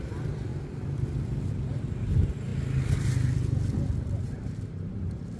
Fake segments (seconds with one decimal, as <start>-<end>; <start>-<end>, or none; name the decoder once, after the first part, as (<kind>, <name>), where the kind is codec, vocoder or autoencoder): 0.0-0.5 (vocoder, BigVGAN v2); 1.5-2.5; 4.2-5.4